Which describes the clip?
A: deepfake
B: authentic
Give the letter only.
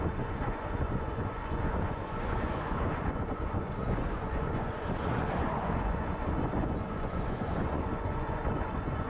A